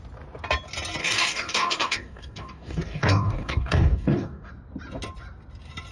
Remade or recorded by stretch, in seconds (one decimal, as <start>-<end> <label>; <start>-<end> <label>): 0.0-1.0 recorded; 1.0-4.5 remade; 4.5-5.9 recorded